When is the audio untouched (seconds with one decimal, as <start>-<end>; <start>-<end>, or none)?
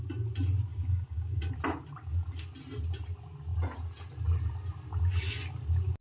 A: 0.0-0.7; 1.5-6.0